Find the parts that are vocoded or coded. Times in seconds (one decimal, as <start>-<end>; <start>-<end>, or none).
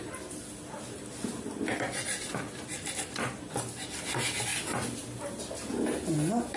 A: 2.7-3.5